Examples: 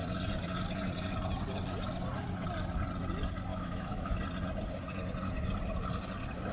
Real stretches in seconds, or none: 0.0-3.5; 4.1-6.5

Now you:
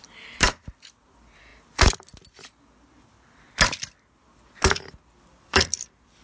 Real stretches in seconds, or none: 1.5-5.2

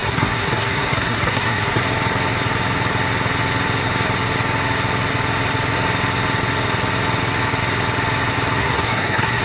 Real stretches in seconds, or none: 1.8-8.6

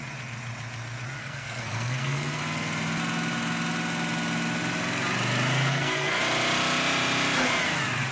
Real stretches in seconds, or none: 0.0-1.2; 2.4-5.7; 6.2-8.1

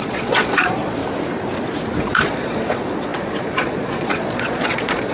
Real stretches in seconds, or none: 1.0-2.0

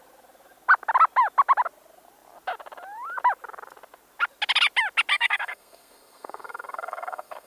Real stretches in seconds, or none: 0.0-5.1

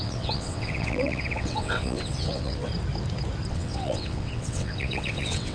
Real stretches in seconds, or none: 2.7-3.5

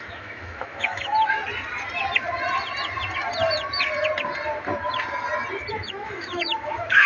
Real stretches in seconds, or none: 1.4-5.7